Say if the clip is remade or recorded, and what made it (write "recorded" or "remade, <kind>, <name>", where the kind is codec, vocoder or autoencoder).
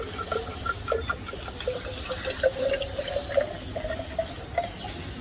recorded